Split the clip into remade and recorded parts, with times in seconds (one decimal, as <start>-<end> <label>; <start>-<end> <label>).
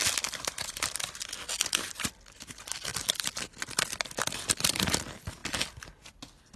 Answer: 0.0-6.6 recorded